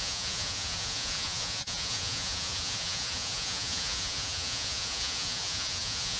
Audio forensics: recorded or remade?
remade